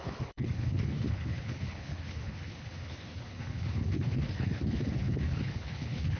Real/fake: fake